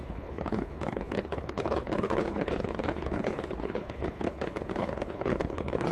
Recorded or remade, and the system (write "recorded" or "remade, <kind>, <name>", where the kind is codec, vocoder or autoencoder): remade, codec, HILCodec